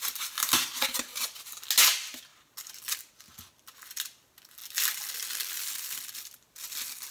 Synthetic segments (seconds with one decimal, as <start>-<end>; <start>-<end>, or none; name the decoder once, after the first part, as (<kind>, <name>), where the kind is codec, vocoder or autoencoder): none